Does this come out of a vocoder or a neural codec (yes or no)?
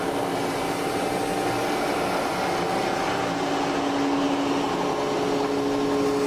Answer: no